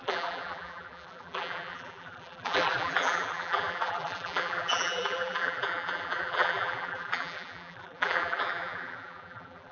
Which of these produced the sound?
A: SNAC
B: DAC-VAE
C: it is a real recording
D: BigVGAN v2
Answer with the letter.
D